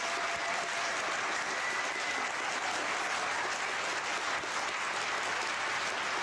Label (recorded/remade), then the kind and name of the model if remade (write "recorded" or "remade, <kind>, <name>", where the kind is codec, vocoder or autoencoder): recorded